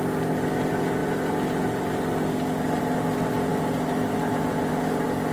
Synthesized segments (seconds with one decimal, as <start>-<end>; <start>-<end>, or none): none

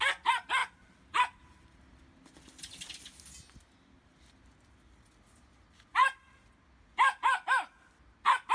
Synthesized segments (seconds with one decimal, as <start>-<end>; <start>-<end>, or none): 0.6-1.8

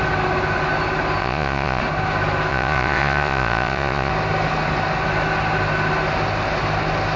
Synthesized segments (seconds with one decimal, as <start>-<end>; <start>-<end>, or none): 1.2-1.8; 2.5-4.1

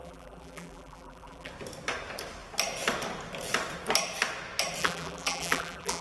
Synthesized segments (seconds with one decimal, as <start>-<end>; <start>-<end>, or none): 0.0-1.5; 4.8-6.0

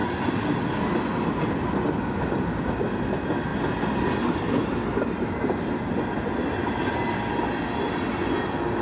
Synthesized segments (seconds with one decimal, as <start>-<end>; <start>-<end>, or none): none

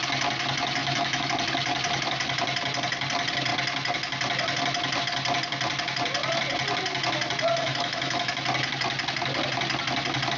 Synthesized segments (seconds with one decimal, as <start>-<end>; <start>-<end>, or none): 0.8-1.3; 7.6-8.3